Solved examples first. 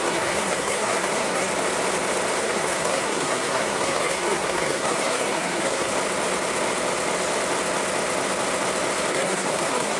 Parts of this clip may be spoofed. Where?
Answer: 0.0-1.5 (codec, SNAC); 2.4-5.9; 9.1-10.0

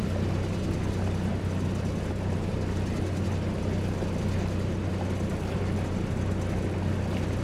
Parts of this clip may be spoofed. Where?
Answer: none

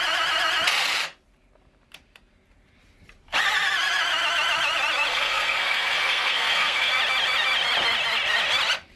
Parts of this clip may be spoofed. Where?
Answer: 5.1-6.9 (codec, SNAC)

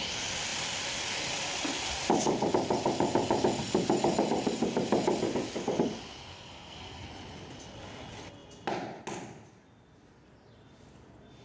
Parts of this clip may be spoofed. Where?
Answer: 6.3-7.1 (codec, SNAC)

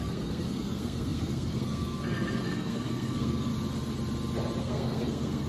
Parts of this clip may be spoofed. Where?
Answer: 0.0-3.5 (codec, SNAC); 4.6-5.5

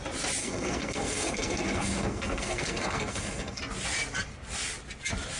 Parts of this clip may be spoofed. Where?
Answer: 0.4-3.6 (codec, SNAC)